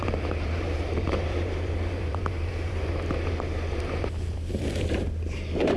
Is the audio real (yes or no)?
no